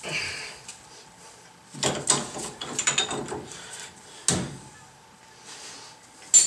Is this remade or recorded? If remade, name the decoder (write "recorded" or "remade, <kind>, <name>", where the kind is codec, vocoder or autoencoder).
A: recorded